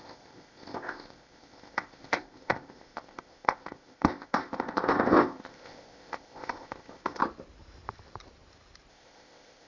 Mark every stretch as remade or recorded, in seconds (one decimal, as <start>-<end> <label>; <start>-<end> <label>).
0.0-7.2 remade; 7.2-8.9 recorded; 8.9-9.7 remade